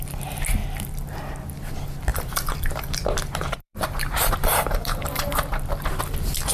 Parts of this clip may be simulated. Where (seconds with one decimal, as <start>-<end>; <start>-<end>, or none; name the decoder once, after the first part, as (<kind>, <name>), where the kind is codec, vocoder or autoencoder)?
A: 2.1-6.0 (vocoder, BigVGAN v2)

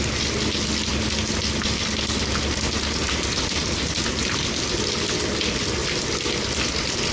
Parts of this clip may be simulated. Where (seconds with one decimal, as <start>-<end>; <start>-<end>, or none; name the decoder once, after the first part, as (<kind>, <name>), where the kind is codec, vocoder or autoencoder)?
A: none

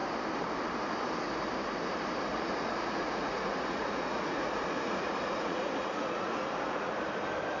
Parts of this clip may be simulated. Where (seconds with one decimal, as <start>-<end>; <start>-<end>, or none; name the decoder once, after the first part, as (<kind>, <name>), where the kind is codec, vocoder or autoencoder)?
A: 2.3-6.9 (vocoder, Vocos)